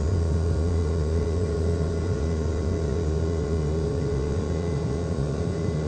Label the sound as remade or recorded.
remade